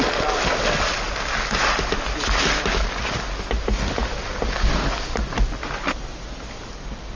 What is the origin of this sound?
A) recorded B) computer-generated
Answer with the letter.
A